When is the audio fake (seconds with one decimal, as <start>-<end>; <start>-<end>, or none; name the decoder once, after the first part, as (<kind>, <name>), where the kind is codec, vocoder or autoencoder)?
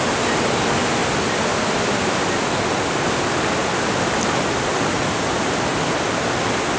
none